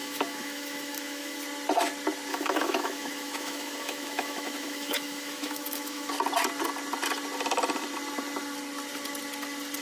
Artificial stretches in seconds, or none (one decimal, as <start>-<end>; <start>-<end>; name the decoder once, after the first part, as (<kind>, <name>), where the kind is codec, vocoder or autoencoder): 0.0-1.4 (autoencoder, DAC-VAE); 2.3-6.1